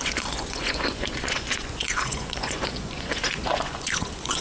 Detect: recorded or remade remade